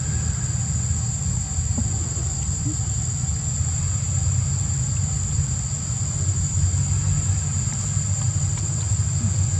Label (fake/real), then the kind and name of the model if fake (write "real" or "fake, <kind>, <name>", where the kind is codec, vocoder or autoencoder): real